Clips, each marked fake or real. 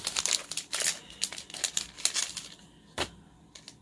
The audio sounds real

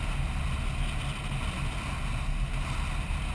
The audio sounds real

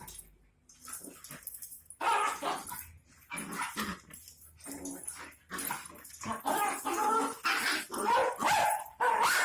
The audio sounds real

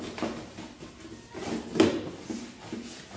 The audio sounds real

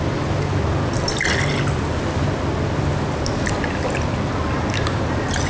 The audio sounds real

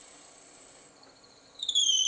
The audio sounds real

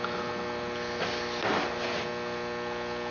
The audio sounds real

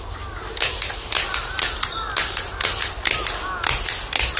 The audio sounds real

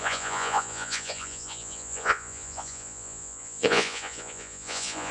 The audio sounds fake